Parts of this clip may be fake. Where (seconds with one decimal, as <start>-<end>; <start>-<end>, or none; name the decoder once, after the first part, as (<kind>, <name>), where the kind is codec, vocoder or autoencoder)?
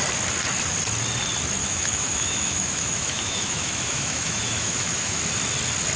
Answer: 1.6-5.2 (autoencoder, DAC-VAE)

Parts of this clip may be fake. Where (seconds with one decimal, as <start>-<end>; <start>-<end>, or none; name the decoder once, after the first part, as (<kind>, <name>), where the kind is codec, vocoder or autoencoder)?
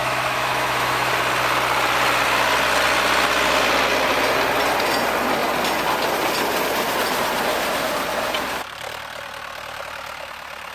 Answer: 0.0-1.1 (autoencoder, DAC-VAE)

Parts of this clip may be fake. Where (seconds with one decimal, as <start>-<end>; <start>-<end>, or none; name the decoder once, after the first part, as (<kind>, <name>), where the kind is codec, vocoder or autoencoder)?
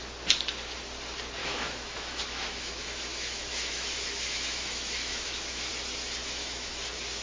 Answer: 1.4-5.7 (autoencoder, DAC-VAE); 6.2-6.8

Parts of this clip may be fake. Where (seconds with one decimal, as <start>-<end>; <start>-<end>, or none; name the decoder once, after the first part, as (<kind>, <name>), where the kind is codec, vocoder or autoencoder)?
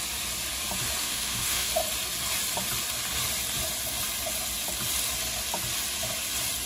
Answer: 1.0-1.7 (autoencoder, DAC-VAE)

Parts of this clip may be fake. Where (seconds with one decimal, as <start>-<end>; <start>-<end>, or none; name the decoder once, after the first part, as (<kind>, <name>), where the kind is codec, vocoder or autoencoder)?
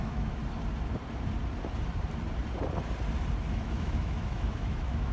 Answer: 0.0-0.4 (autoencoder, DAC-VAE); 3.5-5.1